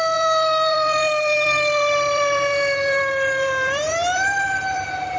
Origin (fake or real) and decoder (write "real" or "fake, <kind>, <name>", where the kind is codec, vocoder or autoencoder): fake, vocoder, BigVGAN v2